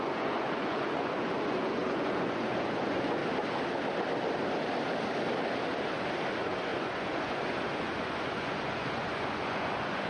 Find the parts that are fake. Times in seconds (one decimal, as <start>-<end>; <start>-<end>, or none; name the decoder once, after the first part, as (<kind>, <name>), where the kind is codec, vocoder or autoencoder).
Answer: 0.0-3.2 (vocoder, Vocos); 6.3-10.1